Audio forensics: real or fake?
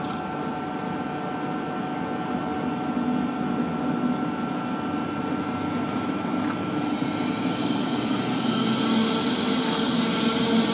real